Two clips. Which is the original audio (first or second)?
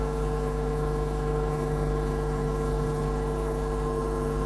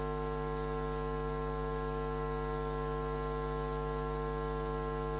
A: second